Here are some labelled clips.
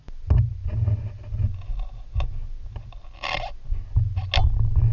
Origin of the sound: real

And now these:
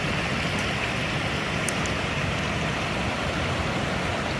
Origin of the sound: real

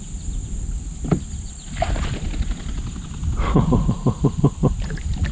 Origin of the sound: real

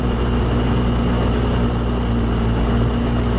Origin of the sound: real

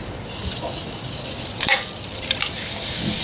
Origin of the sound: real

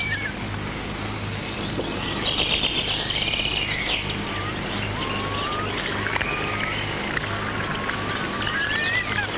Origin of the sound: real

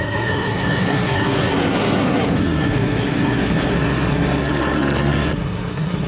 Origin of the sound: fake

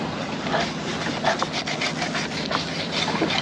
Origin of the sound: real